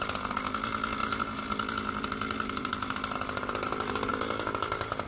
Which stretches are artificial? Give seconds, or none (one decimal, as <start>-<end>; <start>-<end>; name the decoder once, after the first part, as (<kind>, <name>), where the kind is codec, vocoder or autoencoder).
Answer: 1.0-4.1 (vocoder, BigVGAN v2)